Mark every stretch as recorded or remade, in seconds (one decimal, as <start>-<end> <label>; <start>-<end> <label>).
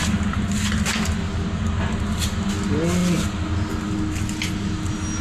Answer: 0.0-5.2 recorded